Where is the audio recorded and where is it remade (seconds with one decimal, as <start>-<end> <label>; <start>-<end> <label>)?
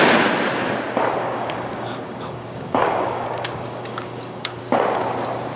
0.0-1.2 recorded; 1.2-4.6 remade; 4.6-5.6 recorded